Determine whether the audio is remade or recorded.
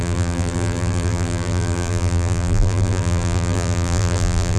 remade